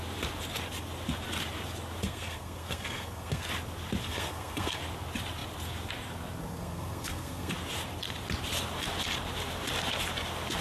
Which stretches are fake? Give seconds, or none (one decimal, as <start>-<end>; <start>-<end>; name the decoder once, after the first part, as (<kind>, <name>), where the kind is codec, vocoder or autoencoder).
2.0-3.5 (codec, SNAC); 4.0-4.8; 6.4-7.5

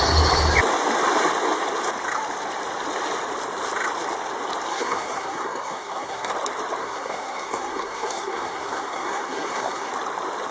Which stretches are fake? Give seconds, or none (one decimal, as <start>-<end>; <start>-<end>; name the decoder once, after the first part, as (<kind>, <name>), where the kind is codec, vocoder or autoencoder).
4.7-6.3 (codec, SNAC); 6.8-9.9